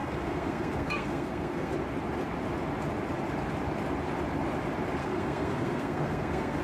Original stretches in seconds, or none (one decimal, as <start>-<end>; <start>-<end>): 1.7-5.0